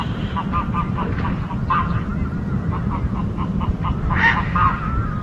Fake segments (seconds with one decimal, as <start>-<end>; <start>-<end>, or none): none